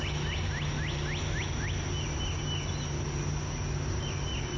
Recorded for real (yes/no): yes